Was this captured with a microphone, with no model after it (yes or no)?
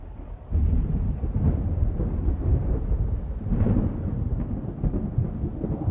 yes